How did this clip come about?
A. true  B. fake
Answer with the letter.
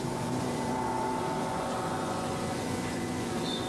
B